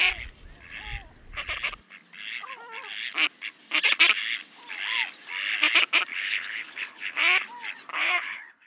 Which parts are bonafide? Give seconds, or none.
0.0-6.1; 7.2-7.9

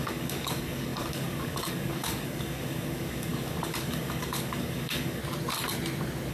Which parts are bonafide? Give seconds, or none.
5.2-6.3

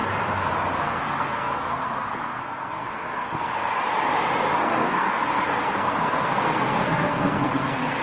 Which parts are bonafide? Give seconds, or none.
0.0-0.8; 3.7-4.6

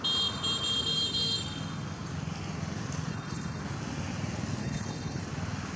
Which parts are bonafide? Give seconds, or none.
0.0-3.1; 3.6-4.6; 5.2-5.8

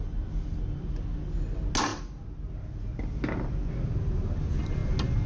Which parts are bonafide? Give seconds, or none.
0.0-5.3

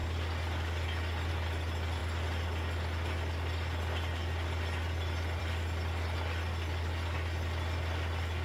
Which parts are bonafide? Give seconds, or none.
0.0-8.4